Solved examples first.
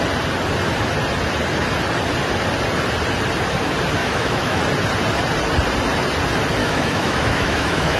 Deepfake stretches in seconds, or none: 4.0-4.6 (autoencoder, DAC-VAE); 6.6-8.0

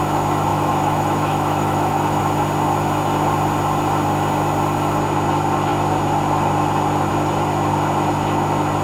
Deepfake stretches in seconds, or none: 0.5-2.2 (autoencoder, DAC-VAE)

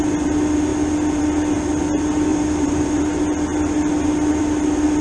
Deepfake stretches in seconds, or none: 2.3-3.0 (vocoder, BigVGAN v2)

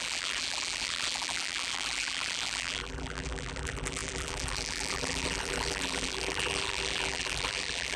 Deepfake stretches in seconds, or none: 0.0-8.0 (vocoder, BigVGAN v2)

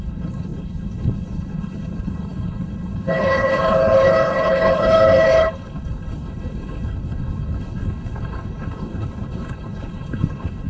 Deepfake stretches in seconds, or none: 0.0-10.7 (codec, HILCodec)

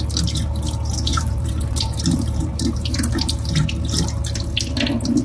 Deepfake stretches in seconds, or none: 1.1-3.3 (vocoder, BigVGAN v2)

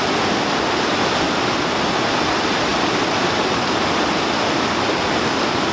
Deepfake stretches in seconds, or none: none